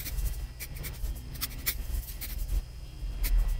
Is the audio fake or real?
real